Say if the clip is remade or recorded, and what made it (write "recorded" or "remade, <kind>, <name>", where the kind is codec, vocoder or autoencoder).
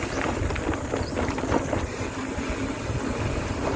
recorded